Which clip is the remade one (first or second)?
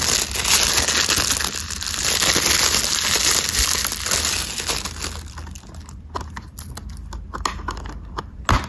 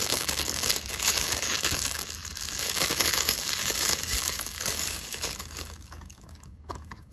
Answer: second